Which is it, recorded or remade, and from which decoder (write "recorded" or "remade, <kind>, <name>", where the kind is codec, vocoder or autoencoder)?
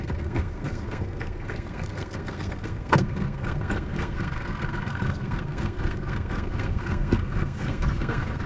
remade, codec, SNAC